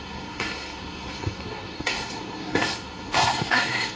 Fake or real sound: fake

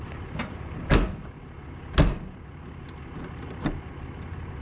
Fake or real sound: real